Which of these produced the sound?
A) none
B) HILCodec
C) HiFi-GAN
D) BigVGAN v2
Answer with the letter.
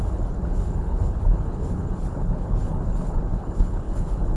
B